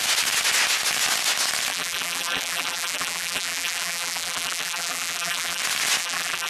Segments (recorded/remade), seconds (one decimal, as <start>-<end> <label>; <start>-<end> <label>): 0.0-1.7 recorded; 1.7-5.6 remade; 5.6-6.0 recorded; 6.0-6.5 remade